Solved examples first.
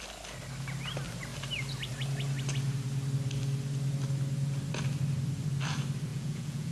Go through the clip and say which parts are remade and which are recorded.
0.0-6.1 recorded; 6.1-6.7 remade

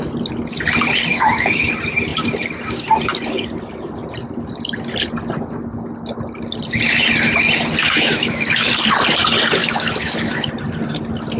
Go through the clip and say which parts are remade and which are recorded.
0.0-1.1 recorded; 1.1-1.7 remade; 1.7-7.8 recorded; 7.8-8.7 remade; 8.7-9.6 recorded; 9.6-10.5 remade; 10.5-11.4 recorded

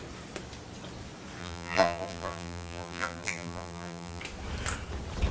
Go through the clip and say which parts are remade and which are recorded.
0.0-1.4 recorded; 1.4-4.2 remade; 4.2-5.3 recorded

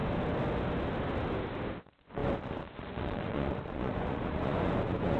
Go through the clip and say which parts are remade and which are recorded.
0.0-1.8 recorded; 1.8-5.2 remade